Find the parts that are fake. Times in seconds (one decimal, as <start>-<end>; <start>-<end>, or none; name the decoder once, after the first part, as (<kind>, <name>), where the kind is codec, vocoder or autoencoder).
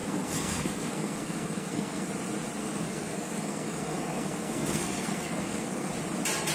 0.0-2.1 (codec, SNAC); 2.6-5.9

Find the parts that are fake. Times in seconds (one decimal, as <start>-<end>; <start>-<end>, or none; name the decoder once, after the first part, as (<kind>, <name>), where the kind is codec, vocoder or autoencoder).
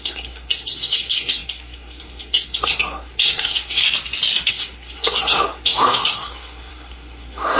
0.0-3.8 (codec, SNAC); 4.5-7.6